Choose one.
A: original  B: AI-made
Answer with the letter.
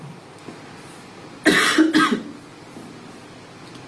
A